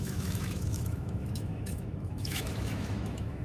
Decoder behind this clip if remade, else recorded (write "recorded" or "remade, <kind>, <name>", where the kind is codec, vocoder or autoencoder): remade, autoencoder, DAC-VAE